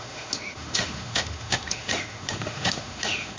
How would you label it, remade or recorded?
remade